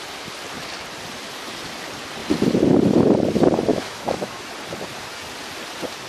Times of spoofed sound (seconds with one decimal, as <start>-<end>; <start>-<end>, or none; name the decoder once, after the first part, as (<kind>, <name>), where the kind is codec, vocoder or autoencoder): 3.7-4.5 (autoencoder, DAC-VAE)